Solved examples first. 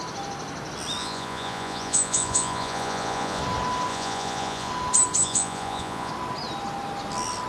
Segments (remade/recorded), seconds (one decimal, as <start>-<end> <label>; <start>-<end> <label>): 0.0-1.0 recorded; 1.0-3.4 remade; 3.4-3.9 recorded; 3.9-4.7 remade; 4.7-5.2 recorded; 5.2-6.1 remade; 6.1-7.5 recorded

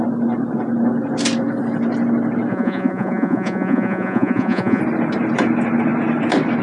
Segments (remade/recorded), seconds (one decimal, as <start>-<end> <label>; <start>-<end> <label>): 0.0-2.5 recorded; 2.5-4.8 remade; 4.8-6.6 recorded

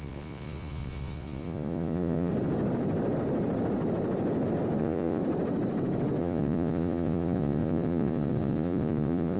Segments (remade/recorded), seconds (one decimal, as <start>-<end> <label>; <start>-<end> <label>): 0.0-2.3 remade; 2.3-4.8 recorded; 4.8-5.2 remade; 5.2-6.2 recorded; 6.2-9.4 remade

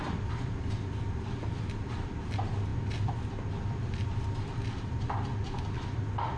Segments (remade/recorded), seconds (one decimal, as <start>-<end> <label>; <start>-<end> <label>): 0.0-6.4 recorded